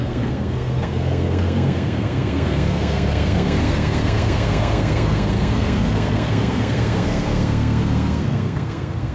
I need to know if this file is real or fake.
fake